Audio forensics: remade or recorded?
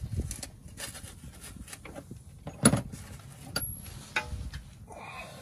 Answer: recorded